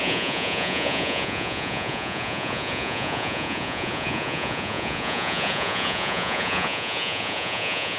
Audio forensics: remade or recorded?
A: remade